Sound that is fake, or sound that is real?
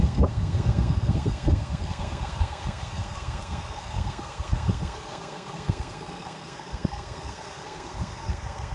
fake